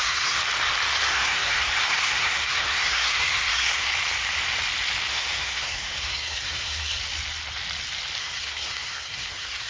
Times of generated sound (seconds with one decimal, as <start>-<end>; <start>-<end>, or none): 0.0-0.4; 1.1-3.9; 5.1-7.0; 8.2-9.7